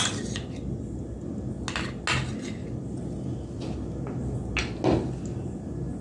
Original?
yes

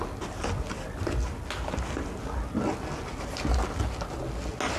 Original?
yes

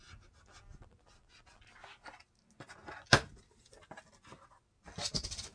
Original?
yes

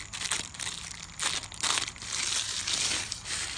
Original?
yes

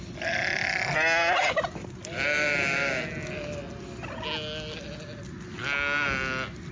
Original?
yes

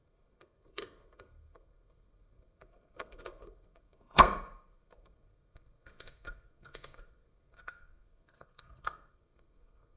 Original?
no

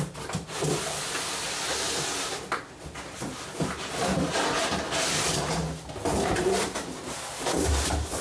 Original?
yes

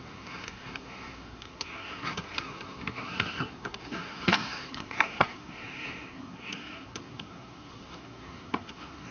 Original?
no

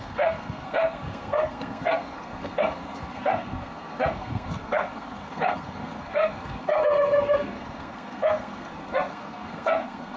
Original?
no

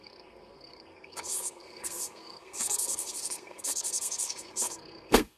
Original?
no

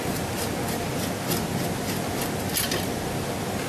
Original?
yes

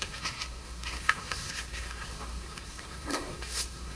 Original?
no